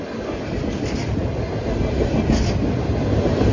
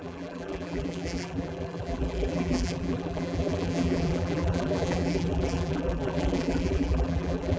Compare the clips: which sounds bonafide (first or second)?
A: first